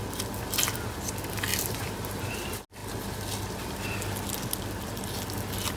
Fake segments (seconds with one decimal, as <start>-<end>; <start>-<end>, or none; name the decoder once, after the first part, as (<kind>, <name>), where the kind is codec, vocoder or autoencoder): 1.5-2.3 (vocoder, BigVGAN v2)